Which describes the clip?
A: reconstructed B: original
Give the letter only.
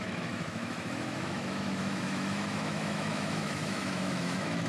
A